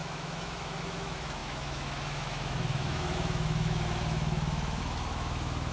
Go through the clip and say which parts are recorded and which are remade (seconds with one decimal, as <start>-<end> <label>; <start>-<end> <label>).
0.0-5.7 remade